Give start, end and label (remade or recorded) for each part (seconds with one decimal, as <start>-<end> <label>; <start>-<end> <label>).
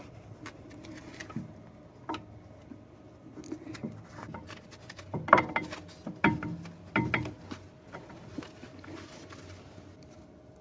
0.0-10.6 recorded